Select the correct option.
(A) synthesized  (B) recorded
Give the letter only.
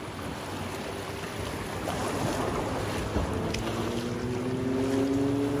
B